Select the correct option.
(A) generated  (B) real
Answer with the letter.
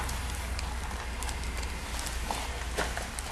B